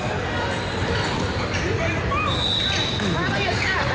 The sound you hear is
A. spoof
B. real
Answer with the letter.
B